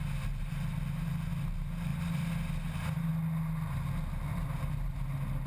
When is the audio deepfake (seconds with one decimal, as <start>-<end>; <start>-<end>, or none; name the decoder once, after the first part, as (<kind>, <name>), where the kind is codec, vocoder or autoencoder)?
4.4-5.1 (vocoder, BigVGAN v2)